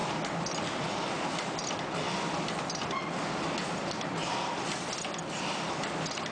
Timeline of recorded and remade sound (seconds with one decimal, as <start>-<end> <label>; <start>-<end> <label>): 0.0-1.9 remade; 1.9-3.6 recorded; 3.6-4.1 remade; 4.1-6.3 recorded